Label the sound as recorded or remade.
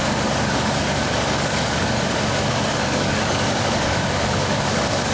remade